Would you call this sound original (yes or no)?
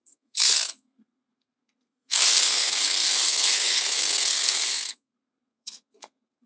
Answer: no